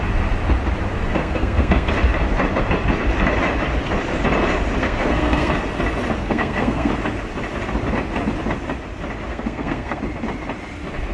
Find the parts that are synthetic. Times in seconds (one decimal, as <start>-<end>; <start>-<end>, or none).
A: 1.2-1.9; 4.8-5.6; 6.2-6.9; 9.3-10.0